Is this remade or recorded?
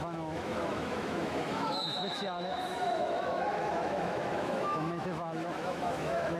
remade